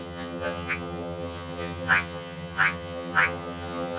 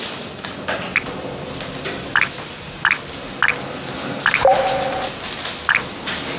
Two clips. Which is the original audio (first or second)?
second